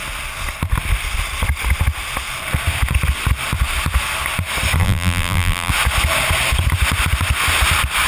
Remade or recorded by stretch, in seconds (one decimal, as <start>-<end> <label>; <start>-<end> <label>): 0.0-4.8 recorded; 4.8-5.7 remade; 5.7-8.1 recorded